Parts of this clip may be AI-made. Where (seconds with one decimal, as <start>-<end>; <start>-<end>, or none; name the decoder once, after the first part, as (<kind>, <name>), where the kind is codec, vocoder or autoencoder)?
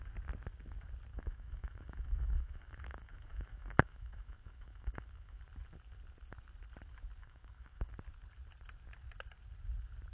1.1-5.4 (autoencoder, DAC-VAE); 7.2-7.9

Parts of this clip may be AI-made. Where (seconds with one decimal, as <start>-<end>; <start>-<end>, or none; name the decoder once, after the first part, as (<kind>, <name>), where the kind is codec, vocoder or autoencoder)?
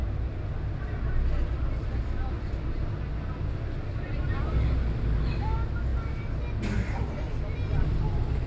none